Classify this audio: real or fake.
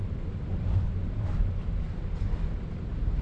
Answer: fake